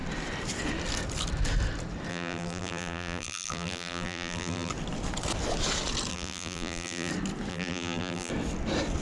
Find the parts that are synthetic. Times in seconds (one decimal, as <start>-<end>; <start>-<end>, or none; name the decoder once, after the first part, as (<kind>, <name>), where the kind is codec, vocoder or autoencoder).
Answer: 2.1-4.7 (vocoder, BigVGAN v2); 6.1-7.1; 7.5-8.3